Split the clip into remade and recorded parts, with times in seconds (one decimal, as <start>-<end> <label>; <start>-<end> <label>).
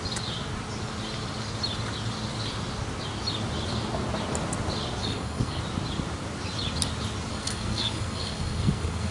0.0-5.0 recorded; 5.0-5.6 remade; 5.6-7.3 recorded; 7.3-9.1 remade